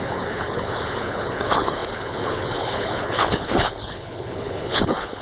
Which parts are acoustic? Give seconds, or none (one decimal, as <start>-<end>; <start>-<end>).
none